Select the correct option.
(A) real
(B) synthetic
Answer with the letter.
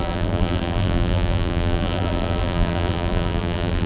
B